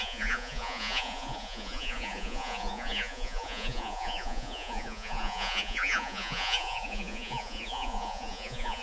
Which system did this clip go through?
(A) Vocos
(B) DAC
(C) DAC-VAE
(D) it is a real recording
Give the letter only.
A